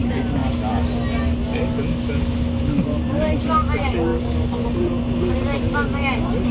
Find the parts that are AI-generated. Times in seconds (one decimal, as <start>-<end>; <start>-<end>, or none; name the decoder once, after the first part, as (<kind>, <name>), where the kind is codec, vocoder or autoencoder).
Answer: none